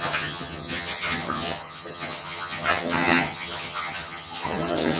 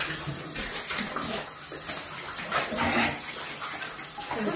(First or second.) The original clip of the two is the second